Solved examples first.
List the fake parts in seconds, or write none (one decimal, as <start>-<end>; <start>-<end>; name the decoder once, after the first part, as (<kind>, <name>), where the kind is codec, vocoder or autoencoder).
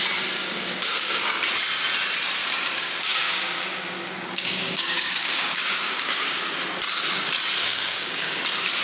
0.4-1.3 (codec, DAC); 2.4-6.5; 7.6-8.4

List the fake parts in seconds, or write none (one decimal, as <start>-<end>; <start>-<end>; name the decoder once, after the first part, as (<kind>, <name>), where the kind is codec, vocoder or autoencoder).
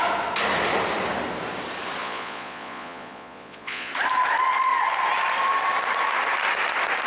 2.0-3.9 (vocoder, Vocos)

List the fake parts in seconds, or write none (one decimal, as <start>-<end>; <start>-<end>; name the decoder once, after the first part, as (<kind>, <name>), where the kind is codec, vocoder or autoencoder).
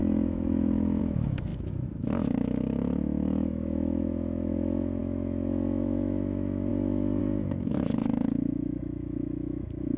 0.0-10.0 (autoencoder, DAC-VAE)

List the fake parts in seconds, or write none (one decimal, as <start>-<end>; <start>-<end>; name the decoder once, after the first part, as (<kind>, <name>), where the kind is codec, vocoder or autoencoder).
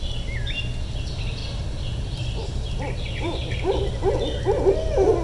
1.4-3.8 (vocoder, BigVGAN v2)